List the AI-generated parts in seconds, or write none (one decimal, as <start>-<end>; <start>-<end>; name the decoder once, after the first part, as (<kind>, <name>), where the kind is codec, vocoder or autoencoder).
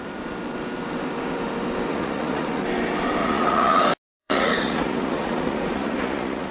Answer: 1.9-2.6 (vocoder, Vocos); 3.2-3.8; 4.2-6.5